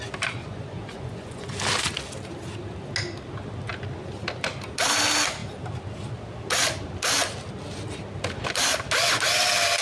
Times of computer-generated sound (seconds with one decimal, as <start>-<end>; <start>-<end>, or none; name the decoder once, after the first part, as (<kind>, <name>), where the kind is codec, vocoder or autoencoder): 0.4-1.5 (vocoder, Vocos)